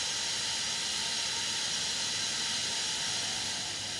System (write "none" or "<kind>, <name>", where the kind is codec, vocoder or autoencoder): none